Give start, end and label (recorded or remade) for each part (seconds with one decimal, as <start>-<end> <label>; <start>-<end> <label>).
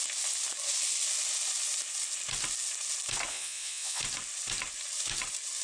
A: 0.0-3.3 recorded; 3.3-4.0 remade; 4.0-5.6 recorded